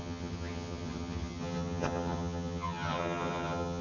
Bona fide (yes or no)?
no